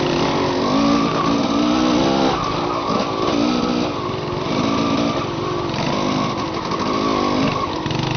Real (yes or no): yes